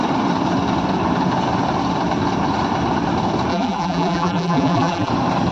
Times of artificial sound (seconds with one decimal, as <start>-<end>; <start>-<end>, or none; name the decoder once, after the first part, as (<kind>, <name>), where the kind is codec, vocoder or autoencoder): 3.5-5.1 (vocoder, BigVGAN v2)